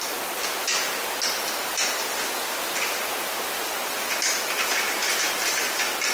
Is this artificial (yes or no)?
no